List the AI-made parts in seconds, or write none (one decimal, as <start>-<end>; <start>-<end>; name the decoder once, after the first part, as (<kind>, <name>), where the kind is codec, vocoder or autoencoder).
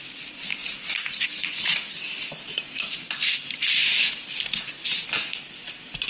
0.6-4.3 (vocoder, BigVGAN v2)